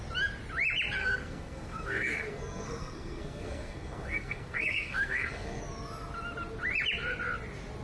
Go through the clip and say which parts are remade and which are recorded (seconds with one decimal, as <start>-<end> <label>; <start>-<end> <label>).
0.0-1.0 recorded; 1.0-5.6 remade; 5.6-7.8 recorded